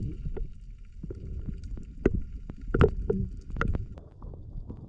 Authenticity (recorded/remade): recorded